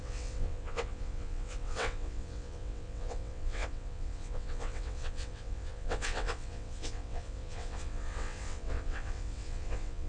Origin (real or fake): fake